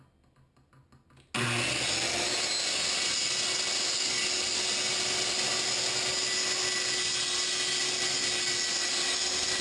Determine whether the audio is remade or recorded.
recorded